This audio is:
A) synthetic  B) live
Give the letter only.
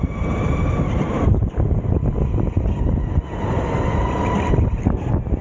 B